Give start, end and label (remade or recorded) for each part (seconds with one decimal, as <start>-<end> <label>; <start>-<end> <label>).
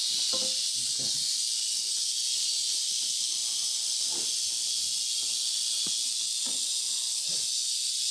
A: 0.0-8.1 recorded